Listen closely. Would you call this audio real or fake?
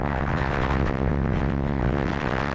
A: fake